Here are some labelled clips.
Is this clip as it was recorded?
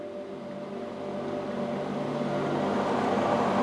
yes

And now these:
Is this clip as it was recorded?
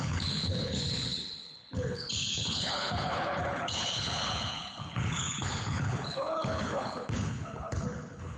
no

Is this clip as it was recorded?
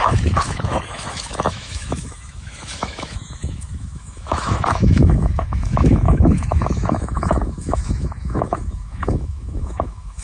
no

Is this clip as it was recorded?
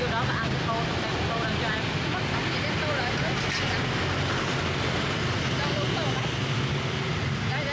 yes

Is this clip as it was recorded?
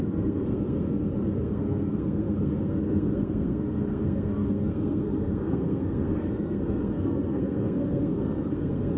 no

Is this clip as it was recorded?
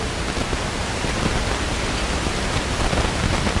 yes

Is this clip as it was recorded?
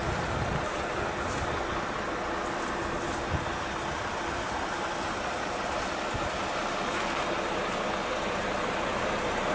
yes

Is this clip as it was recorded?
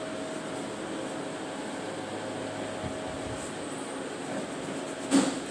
yes